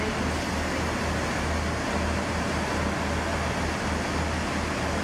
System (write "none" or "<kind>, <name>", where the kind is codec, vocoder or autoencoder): none